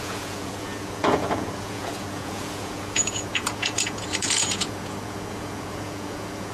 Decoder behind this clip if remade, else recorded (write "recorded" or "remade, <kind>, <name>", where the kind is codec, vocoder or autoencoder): remade, vocoder, Vocos